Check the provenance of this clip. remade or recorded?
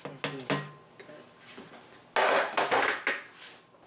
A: recorded